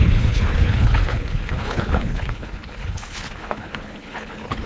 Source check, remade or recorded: remade